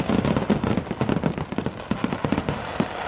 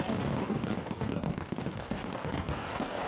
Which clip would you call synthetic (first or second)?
second